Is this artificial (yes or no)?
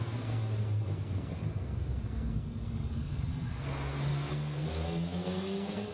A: yes